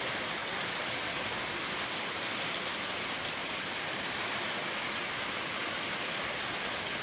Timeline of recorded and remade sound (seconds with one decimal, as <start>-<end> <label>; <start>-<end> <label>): 0.0-7.0 recorded